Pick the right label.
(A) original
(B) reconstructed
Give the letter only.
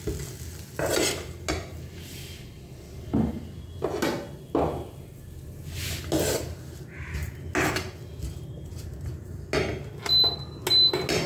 A